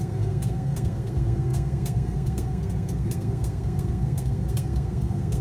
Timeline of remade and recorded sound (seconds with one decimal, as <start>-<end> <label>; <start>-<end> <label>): 0.0-5.4 remade